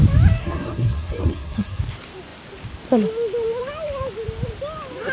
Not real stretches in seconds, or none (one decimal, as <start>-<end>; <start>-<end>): 0.4-1.8